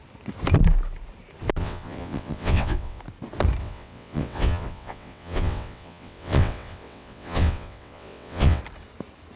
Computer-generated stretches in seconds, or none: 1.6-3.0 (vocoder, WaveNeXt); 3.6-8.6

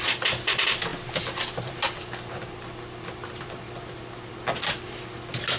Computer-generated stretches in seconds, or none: none

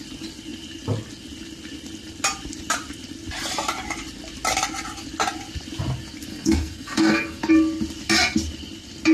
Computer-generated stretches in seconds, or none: 6.3-7.5 (codec, SNAC)

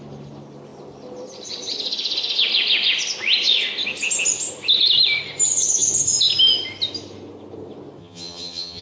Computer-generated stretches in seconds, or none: 8.0-8.8 (vocoder, HiFi-GAN)

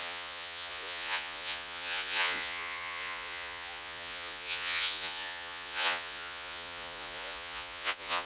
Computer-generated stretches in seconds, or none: 0.0-8.3 (vocoder, Vocos)

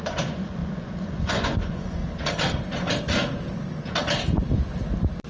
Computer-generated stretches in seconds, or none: 0.0-2.0 (vocoder, Vocos)